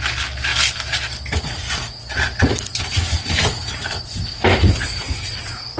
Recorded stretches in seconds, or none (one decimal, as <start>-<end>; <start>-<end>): 0.0-5.8